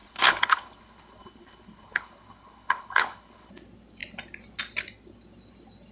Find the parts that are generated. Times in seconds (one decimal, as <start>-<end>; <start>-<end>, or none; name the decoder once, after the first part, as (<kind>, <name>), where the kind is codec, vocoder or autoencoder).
0.0-3.5 (codec, HILCodec)